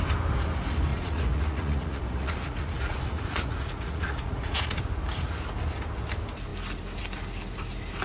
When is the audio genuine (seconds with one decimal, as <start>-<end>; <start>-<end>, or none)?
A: 0.0-0.9; 4.8-8.0